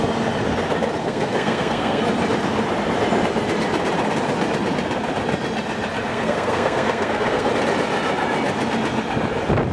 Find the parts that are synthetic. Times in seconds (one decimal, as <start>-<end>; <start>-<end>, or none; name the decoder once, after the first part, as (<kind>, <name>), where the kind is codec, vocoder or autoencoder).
1.0-2.0 (codec, SNAC); 6.1-7.5